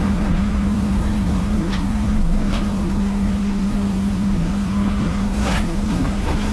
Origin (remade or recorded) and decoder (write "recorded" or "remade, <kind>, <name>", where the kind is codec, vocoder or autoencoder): remade, codec, SNAC